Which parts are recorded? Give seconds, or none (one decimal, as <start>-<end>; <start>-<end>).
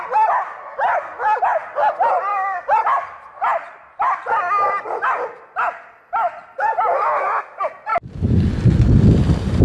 0.0-1.1; 1.9-2.3; 7.4-7.9; 9.1-9.6